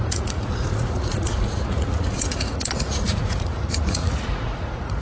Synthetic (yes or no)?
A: yes